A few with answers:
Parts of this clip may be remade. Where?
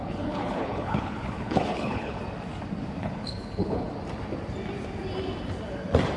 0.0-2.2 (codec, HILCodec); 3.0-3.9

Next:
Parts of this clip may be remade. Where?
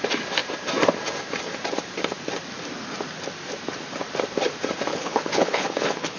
4.9-6.2 (codec, HILCodec)